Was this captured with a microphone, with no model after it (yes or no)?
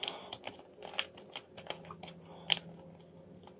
yes